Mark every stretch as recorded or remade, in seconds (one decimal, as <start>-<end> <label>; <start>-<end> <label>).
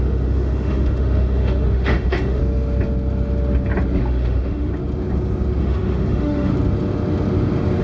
0.0-2.4 remade; 2.4-4.0 recorded; 4.0-4.7 remade; 4.7-5.6 recorded; 5.6-6.5 remade; 6.5-7.8 recorded